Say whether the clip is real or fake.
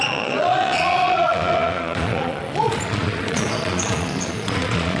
fake